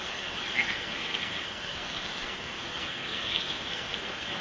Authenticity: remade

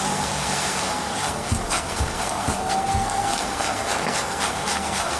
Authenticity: remade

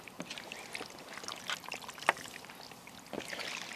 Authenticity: recorded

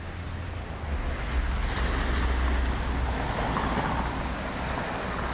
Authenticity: recorded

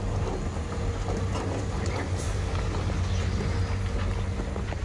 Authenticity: recorded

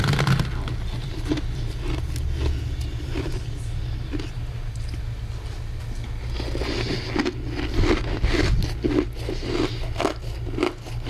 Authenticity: recorded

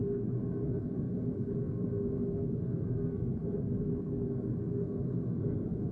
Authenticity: remade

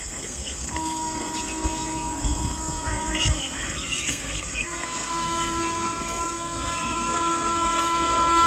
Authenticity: remade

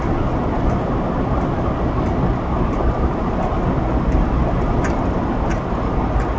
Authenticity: recorded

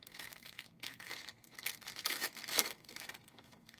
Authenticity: remade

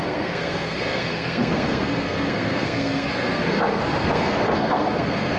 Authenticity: remade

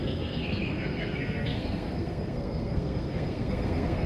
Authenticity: remade